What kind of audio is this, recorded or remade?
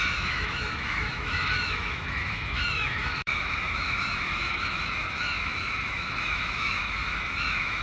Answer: remade